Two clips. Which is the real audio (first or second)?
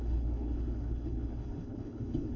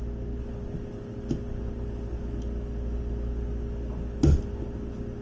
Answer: second